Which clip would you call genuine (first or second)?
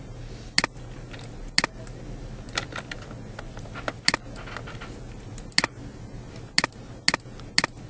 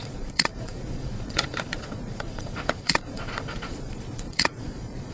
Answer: first